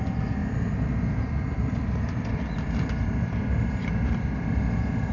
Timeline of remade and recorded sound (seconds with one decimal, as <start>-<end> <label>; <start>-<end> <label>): 0.0-5.1 recorded